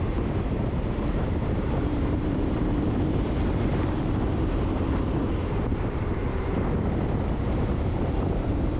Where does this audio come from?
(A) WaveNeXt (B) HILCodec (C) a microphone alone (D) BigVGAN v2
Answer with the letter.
D